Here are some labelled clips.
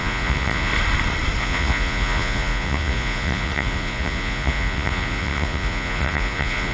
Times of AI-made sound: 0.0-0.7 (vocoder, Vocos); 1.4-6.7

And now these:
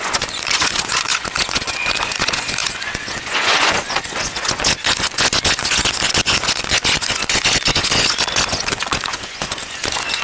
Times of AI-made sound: 0.0-10.2 (vocoder, Vocos)

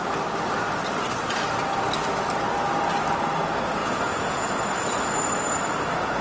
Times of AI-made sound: 3.8-4.5 (vocoder, Vocos)

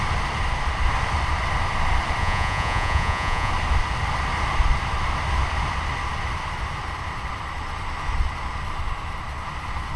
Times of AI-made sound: 2.2-3.5 (vocoder, Vocos)